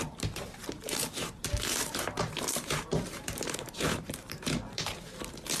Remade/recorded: remade